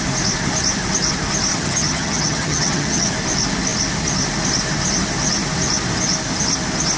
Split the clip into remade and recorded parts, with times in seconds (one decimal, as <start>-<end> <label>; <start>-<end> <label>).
0.0-1.5 recorded; 1.5-3.1 remade; 3.1-7.0 recorded